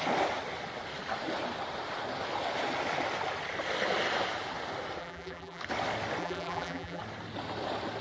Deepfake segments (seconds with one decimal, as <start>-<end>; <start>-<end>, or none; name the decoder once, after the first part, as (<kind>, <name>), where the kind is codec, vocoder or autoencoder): 5.0-5.6 (vocoder, BigVGAN v2); 6.2-7.0